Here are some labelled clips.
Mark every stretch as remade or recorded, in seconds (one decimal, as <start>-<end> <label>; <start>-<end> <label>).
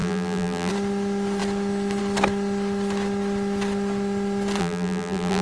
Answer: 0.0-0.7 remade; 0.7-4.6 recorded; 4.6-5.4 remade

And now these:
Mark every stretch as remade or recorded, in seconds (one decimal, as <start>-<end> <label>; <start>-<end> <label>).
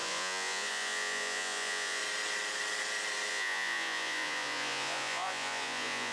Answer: 0.0-2.0 remade; 2.0-3.3 recorded; 3.3-6.1 remade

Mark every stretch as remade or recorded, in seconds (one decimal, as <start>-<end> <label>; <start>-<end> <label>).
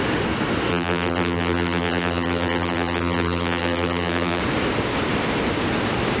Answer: 0.0-0.7 recorded; 0.7-4.4 remade; 4.4-6.2 recorded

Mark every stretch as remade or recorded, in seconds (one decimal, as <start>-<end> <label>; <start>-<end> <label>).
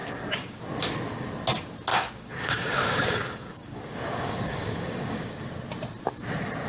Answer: 0.0-0.6 remade; 0.6-1.9 recorded; 1.9-5.4 remade; 5.4-6.7 recorded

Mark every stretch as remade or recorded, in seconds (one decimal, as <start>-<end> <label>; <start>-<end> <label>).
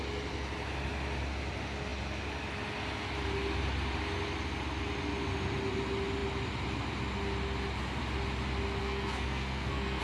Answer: 0.0-8.8 recorded; 8.8-10.0 remade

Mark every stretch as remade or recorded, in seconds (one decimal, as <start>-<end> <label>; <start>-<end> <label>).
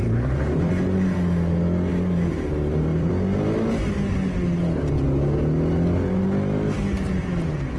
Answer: 0.0-0.7 remade; 0.7-1.9 recorded; 1.9-3.1 remade; 3.1-7.8 recorded